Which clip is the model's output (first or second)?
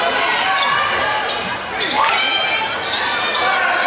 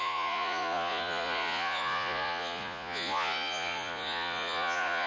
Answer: second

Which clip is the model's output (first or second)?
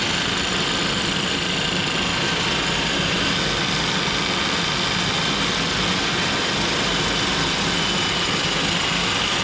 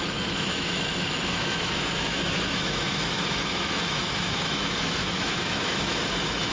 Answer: second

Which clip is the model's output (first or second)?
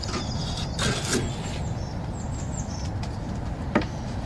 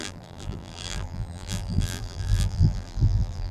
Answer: second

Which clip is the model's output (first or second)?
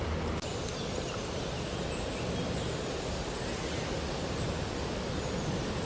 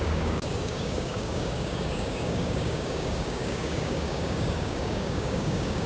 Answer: second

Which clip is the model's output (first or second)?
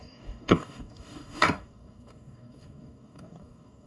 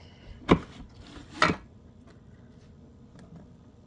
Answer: first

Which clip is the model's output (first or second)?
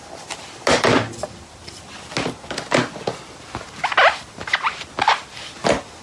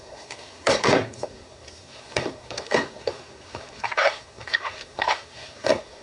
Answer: second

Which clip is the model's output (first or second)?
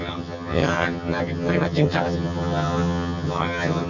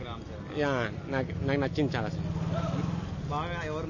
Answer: first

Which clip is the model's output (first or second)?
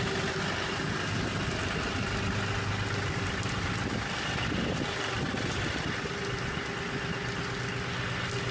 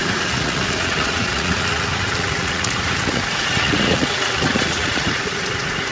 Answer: second